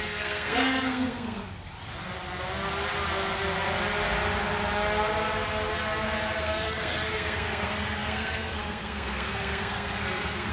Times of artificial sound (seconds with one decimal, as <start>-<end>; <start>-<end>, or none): 0.0-1.4; 6.4-10.5